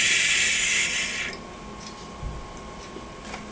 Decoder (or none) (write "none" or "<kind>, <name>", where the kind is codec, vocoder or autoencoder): none